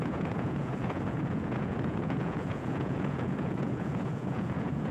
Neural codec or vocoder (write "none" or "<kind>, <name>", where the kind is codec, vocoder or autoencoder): vocoder, Vocos